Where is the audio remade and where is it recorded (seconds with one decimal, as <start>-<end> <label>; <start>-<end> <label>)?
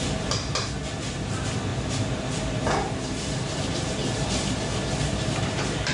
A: 0.0-4.0 remade; 4.0-5.3 recorded; 5.3-5.9 remade